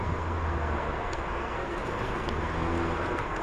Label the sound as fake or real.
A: fake